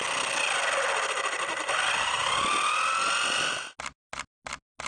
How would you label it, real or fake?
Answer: real